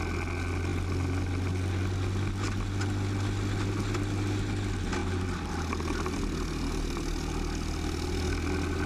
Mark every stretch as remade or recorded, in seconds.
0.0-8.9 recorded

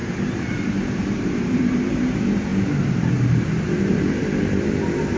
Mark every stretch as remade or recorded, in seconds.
0.0-2.5 remade; 2.5-3.1 recorded; 3.1-5.2 remade

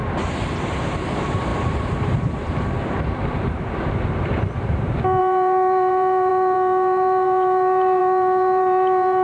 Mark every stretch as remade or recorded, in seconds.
0.0-0.7 recorded; 0.7-9.2 remade

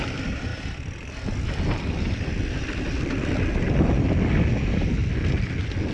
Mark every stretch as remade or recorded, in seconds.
0.0-0.5 remade; 0.5-4.0 recorded; 4.0-5.0 remade; 5.0-5.9 recorded

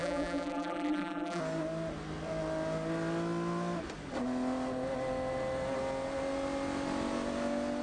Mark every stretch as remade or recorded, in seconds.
0.0-1.4 remade; 1.4-7.8 recorded

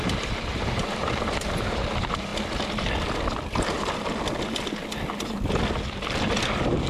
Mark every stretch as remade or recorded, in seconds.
0.0-2.3 remade; 2.3-6.4 recorded; 6.4-6.9 remade

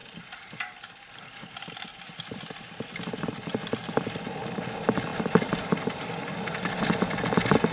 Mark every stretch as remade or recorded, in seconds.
0.0-7.7 remade

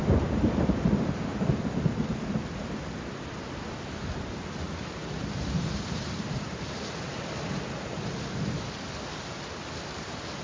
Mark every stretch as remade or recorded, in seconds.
0.0-5.0 recorded; 5.0-6.7 remade; 6.7-10.4 recorded